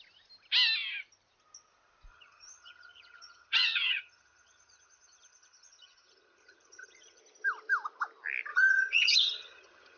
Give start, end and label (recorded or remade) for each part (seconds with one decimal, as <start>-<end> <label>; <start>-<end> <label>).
0.0-2.1 recorded; 2.1-7.2 remade; 7.2-8.5 recorded; 8.5-10.0 remade